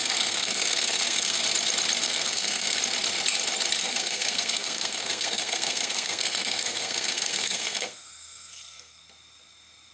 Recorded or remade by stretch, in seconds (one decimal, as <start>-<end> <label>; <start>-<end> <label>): 0.0-1.4 remade; 1.4-2.0 recorded; 2.0-2.8 remade; 2.8-3.8 recorded; 3.8-9.0 remade; 9.0-9.9 recorded